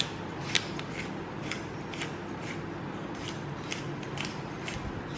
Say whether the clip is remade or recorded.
recorded